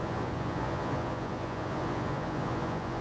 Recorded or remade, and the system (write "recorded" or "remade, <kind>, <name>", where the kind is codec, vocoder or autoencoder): remade, vocoder, Vocos